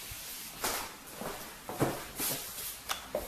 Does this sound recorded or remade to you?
recorded